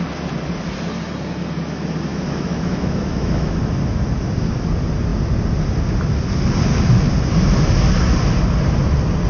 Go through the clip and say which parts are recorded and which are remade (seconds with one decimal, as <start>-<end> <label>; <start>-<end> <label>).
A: 0.0-2.1 recorded; 2.1-3.6 remade; 3.6-9.3 recorded